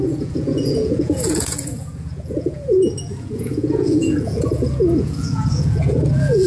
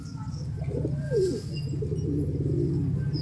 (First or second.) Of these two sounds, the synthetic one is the first